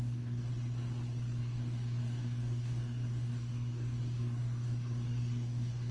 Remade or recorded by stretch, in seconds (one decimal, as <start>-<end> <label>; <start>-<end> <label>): 0.0-0.5 remade; 0.5-1.4 recorded; 1.4-5.9 remade

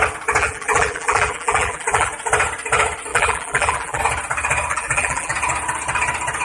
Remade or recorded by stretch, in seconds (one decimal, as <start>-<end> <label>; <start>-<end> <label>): 0.0-0.4 recorded; 0.4-2.1 remade; 2.1-3.1 recorded; 3.1-4.0 remade; 4.0-4.7 recorded; 4.7-5.3 remade; 5.3-6.4 recorded

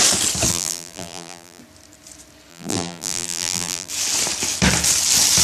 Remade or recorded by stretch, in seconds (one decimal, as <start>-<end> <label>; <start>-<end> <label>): 0.0-0.5 recorded; 0.5-1.6 remade; 1.6-2.5 recorded; 2.5-3.9 remade; 3.9-5.4 recorded

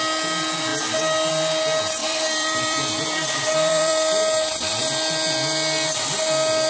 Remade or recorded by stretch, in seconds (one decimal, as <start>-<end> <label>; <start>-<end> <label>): 0.0-2.0 recorded; 2.0-4.8 remade; 4.8-6.7 recorded

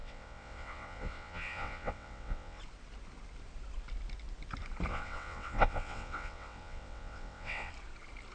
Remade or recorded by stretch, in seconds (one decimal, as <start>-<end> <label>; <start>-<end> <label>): 0.0-2.6 remade; 2.6-4.9 recorded; 4.9-7.7 remade; 7.7-8.3 recorded

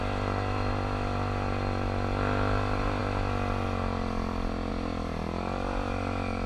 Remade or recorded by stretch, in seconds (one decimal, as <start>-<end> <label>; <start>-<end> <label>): 0.0-6.5 recorded

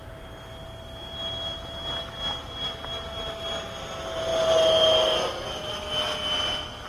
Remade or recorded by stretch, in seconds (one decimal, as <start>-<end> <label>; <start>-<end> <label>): 0.0-6.9 recorded

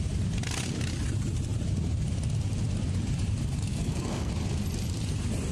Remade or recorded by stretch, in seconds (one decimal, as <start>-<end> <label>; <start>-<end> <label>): 0.0-3.7 recorded; 3.7-4.3 remade; 4.3-5.5 recorded